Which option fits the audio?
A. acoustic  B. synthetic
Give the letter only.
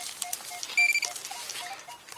A